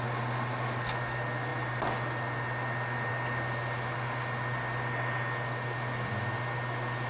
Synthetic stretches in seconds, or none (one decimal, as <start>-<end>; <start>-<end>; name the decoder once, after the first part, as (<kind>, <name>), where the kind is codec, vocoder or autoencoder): none